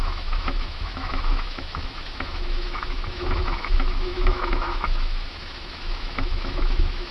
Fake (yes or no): yes